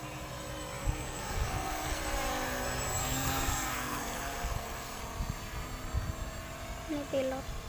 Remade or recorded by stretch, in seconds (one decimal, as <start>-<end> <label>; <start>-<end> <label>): 0.0-0.8 recorded; 0.8-2.0 remade; 2.0-3.0 recorded; 3.0-5.0 remade; 5.0-7.7 recorded